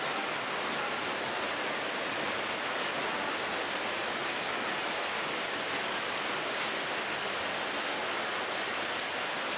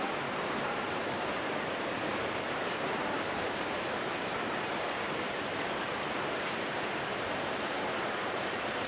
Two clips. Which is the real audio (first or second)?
first